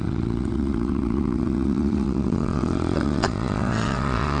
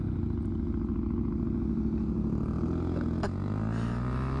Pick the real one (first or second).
second